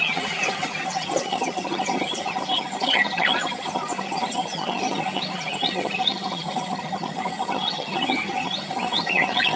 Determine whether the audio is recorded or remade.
remade